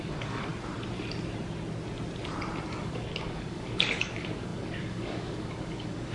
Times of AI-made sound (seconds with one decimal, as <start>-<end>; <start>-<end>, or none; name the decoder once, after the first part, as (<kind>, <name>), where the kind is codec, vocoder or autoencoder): 0.0-0.5 (codec, DAC); 2.8-6.1